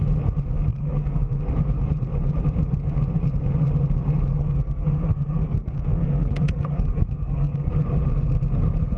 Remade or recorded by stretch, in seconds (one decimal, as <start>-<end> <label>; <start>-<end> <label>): 0.0-0.7 recorded; 0.7-1.4 remade; 1.4-4.3 recorded; 4.3-7.7 remade; 7.7-9.0 recorded